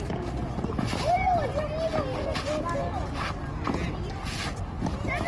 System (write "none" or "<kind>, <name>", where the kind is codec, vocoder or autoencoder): none